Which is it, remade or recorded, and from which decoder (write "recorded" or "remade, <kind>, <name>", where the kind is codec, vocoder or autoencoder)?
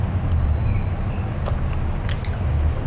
recorded